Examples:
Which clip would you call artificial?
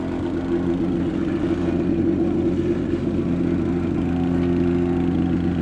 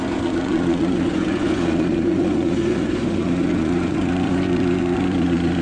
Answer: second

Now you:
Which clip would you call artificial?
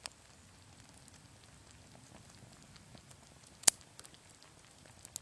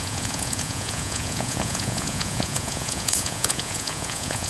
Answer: second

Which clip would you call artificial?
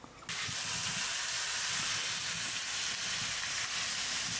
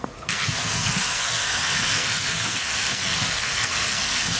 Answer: second